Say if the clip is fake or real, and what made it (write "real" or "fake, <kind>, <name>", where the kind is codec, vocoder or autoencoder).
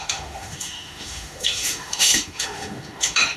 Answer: fake, autoencoder, DAC-VAE